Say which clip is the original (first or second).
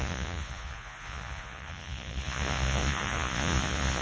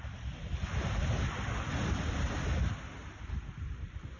second